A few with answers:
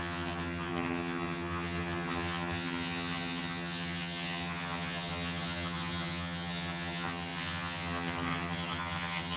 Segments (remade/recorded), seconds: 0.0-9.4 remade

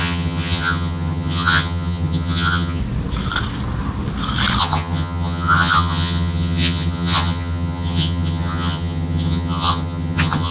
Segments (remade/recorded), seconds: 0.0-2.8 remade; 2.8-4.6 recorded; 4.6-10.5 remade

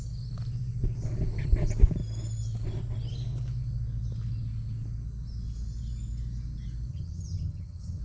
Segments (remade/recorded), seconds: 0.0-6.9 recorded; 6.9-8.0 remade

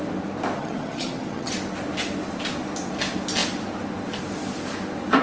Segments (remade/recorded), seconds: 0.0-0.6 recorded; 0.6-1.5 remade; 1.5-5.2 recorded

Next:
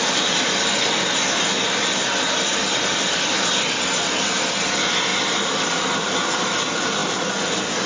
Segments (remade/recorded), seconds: 0.0-7.9 recorded

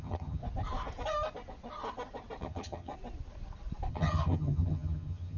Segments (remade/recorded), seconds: 0.0-0.4 remade; 0.4-2.4 recorded; 2.4-2.9 remade; 2.9-3.9 recorded; 3.9-5.4 remade